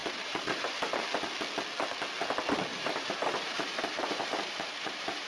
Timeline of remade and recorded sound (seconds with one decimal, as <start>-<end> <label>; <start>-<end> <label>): 0.0-0.9 remade; 0.9-2.7 recorded; 2.7-5.3 remade